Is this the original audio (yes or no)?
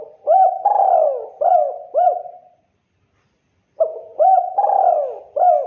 yes